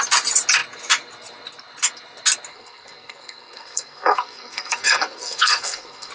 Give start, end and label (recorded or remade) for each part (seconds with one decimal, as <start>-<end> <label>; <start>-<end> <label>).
0.0-2.5 recorded; 2.5-6.1 remade

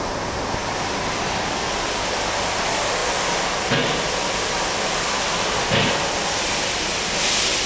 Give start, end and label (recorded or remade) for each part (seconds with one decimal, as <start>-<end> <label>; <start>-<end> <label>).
0.0-7.7 recorded